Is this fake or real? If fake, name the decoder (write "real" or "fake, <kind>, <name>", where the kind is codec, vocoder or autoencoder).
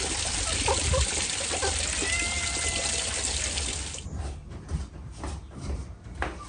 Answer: real